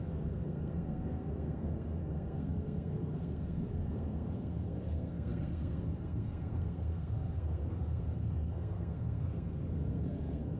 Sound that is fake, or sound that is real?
fake